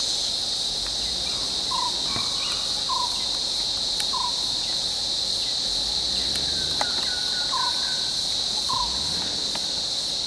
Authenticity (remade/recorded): recorded